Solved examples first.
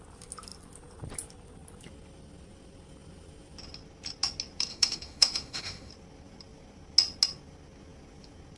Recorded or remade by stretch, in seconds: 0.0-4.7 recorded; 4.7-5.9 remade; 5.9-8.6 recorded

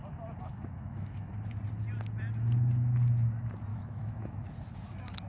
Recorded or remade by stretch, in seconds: 0.0-0.5 recorded; 0.5-1.3 remade; 1.3-3.7 recorded; 3.7-4.5 remade; 4.5-5.3 recorded

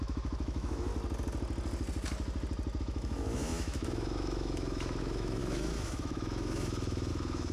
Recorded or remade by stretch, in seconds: 0.0-0.9 remade; 0.9-2.8 recorded; 2.8-7.5 remade

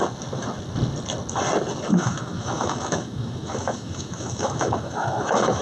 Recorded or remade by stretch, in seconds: 0.0-1.9 recorded; 1.9-5.6 remade

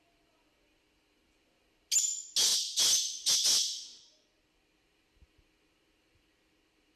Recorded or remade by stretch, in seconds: 0.0-7.0 recorded